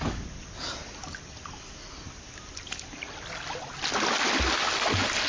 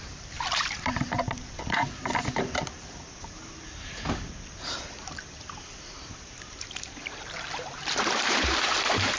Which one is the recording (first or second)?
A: first